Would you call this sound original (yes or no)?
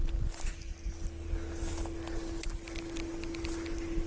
yes